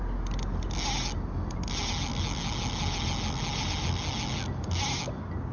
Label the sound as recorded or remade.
recorded